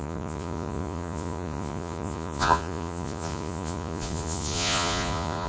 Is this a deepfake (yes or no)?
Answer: yes